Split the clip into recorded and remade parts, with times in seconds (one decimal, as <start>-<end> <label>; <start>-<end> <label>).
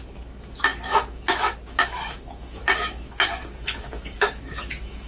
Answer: 0.0-5.1 remade